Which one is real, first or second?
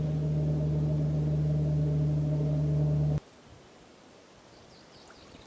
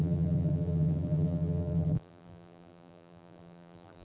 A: first